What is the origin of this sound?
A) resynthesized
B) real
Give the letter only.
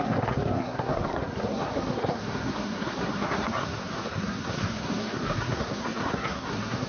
A